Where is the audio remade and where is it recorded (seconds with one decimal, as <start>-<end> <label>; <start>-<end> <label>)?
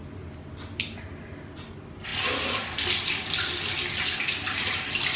0.0-5.2 recorded